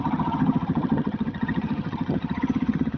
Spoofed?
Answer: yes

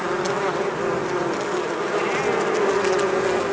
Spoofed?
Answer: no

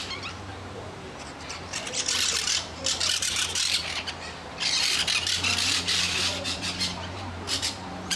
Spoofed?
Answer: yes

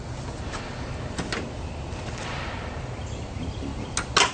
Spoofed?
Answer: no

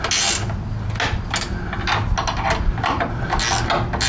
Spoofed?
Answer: no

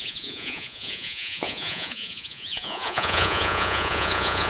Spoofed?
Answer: yes